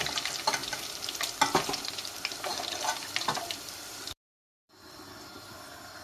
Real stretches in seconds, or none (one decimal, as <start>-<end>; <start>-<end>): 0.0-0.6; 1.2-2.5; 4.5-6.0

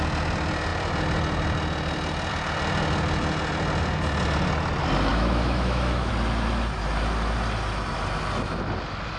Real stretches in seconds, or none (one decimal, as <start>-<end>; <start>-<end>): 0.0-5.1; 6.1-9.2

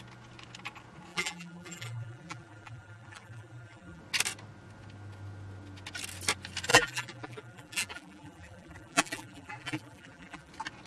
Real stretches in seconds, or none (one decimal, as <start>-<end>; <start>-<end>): 0.0-1.1; 4.0-6.7; 10.5-10.9

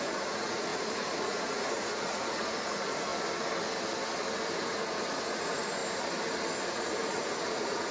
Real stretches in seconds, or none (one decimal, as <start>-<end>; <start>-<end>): 3.1-4.6; 5.8-6.6

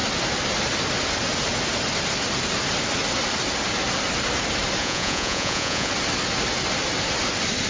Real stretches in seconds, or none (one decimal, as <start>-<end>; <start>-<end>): 0.0-4.8; 5.9-7.7

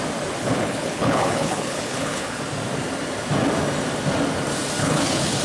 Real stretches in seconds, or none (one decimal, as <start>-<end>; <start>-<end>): 0.0-0.4; 2.4-4.8

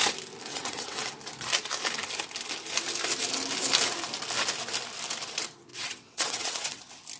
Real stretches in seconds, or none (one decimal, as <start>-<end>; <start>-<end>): 0.0-0.5; 1.1-5.7; 6.8-7.2

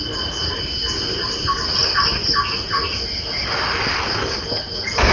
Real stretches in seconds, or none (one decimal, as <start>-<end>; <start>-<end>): 0.0-5.1